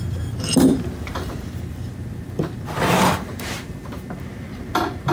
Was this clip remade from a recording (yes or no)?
yes